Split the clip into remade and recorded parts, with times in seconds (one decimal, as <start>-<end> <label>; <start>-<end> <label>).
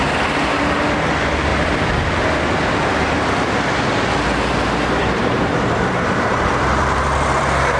0.0-1.5 recorded; 1.5-2.0 remade; 2.0-5.0 recorded; 5.0-7.8 remade